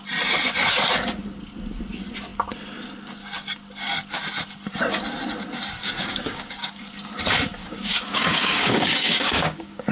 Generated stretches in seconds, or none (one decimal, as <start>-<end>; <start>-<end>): 5.8-6.8; 7.6-9.9